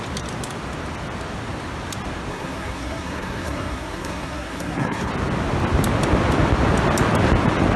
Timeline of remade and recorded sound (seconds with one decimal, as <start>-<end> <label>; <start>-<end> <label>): 0.0-2.3 recorded; 2.3-5.1 remade; 5.1-7.8 recorded